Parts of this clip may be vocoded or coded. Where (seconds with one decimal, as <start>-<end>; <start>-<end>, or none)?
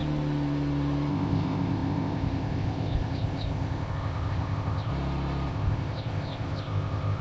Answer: 1.1-4.9; 5.5-7.2